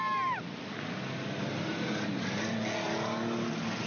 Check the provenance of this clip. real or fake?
real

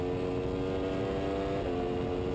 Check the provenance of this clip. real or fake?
real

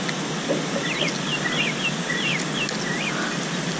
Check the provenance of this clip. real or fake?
real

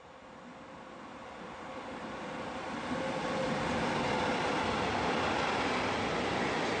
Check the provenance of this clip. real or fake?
real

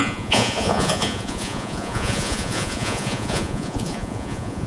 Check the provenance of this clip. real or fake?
fake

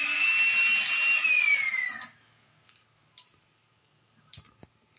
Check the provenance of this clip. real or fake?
real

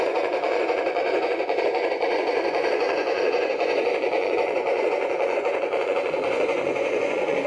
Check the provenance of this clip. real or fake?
fake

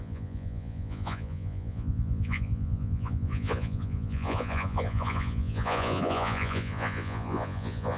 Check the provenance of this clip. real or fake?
fake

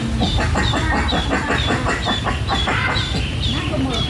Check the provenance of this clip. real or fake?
real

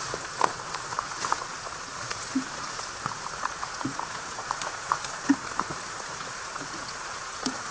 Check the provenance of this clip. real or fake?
fake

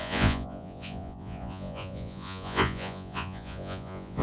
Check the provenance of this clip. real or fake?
fake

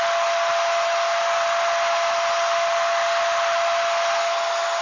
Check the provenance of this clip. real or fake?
real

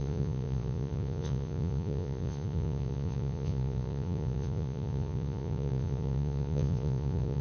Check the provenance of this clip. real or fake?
fake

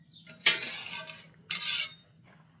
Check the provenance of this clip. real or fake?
real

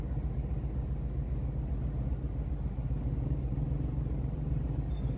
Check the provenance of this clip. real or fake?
real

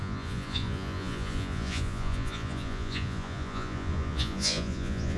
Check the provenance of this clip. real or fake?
fake